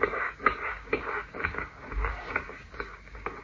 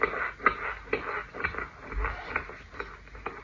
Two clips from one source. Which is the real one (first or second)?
second